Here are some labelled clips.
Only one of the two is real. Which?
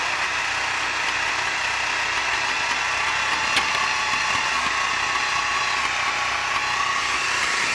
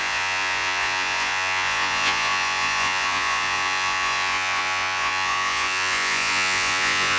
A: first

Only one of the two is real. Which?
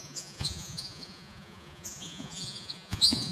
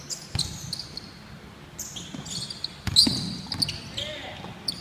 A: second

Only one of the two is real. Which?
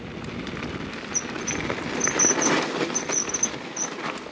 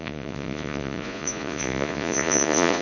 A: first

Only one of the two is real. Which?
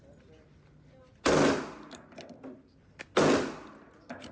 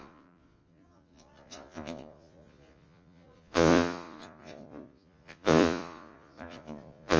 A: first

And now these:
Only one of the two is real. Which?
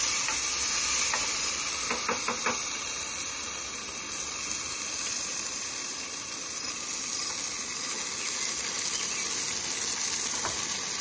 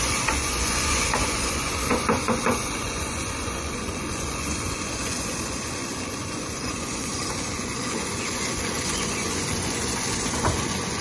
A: first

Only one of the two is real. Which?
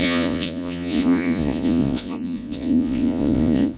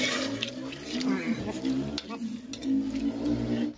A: second